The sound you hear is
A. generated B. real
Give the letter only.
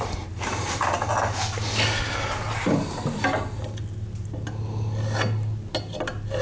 B